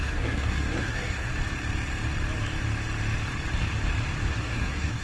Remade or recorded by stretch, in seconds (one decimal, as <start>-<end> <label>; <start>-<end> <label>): 0.0-1.3 remade; 1.3-4.3 recorded; 4.3-5.0 remade